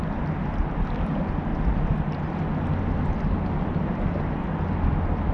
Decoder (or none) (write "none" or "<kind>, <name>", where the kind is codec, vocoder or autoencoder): none